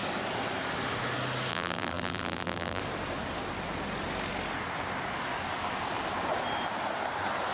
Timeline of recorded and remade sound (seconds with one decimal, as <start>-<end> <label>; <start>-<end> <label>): 0.0-1.5 recorded; 1.5-2.8 remade; 2.8-7.5 recorded